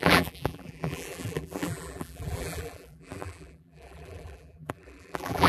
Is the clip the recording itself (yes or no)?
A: no